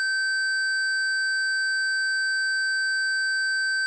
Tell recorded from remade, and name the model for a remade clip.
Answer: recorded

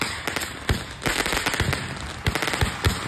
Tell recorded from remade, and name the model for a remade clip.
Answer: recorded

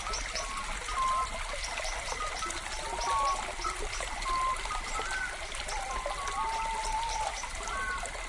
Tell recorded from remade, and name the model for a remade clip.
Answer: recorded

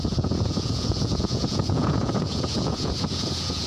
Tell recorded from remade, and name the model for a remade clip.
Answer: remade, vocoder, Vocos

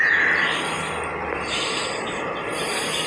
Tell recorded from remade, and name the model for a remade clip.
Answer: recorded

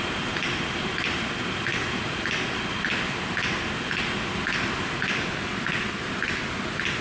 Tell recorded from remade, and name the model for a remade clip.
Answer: recorded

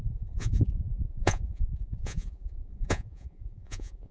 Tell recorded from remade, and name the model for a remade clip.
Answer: remade, vocoder, Vocos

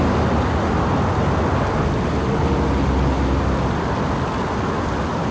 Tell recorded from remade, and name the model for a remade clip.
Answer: recorded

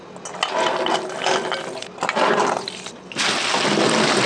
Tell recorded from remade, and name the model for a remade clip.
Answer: recorded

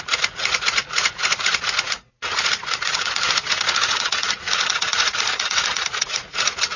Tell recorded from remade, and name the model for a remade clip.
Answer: remade, vocoder, Vocos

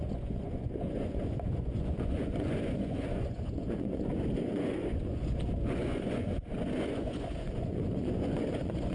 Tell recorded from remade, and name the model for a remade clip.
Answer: remade, vocoder, Vocos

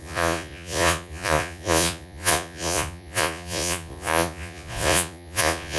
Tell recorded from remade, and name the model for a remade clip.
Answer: remade, vocoder, Vocos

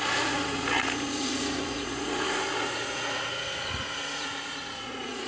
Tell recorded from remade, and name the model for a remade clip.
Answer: remade, vocoder, Vocos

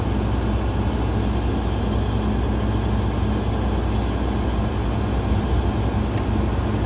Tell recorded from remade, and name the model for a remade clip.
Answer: recorded